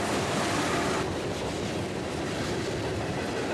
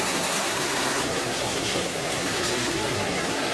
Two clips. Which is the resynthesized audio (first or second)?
second